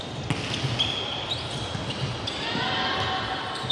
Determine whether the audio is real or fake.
real